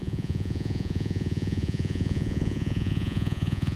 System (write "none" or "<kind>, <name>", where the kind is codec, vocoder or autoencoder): vocoder, Vocos